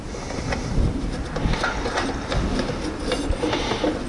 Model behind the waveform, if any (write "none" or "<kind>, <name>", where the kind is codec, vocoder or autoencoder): none